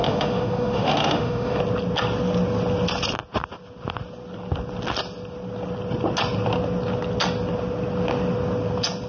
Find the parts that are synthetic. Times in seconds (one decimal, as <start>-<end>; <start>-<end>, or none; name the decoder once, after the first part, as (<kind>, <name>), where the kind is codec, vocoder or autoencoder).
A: 0.0-1.6 (autoencoder, DAC-VAE)